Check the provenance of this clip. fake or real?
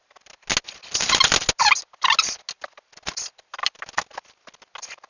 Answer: real